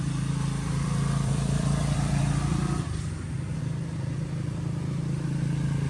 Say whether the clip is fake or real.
fake